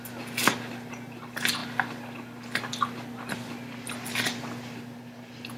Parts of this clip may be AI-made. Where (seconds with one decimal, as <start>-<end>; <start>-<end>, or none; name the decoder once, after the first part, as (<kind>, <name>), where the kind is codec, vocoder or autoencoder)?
none

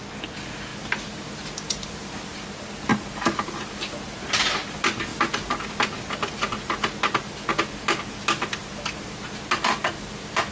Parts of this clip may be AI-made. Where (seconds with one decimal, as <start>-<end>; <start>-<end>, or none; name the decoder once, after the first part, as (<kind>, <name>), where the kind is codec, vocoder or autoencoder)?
2.9-3.5 (vocoder, BigVGAN v2)

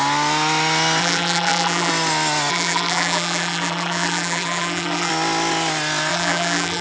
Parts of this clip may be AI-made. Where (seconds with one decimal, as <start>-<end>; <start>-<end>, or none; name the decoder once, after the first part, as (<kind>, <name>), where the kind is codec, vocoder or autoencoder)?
1.0-1.9 (vocoder, BigVGAN v2); 2.5-5.1; 6.1-6.8

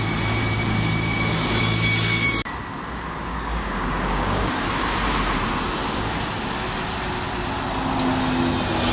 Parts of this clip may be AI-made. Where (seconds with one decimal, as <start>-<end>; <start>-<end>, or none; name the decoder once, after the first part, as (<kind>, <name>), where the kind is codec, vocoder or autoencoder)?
3.3-4.4 (codec, DAC)

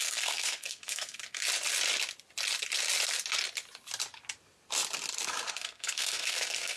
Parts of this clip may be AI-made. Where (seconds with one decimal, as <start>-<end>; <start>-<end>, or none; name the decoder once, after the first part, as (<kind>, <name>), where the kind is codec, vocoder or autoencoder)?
0.0-1.4 (codec, SNAC); 5.5-6.8

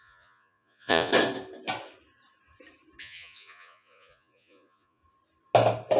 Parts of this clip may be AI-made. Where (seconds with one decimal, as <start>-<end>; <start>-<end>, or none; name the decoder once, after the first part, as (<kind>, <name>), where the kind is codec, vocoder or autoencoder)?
0.0-1.1 (vocoder, Vocos); 3.0-5.0

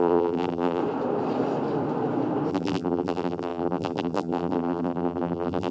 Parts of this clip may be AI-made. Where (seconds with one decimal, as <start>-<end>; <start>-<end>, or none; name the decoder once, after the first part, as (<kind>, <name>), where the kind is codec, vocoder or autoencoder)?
0.0-0.8 (vocoder, BigVGAN v2); 2.5-5.7